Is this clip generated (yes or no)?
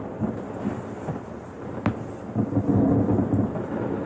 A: no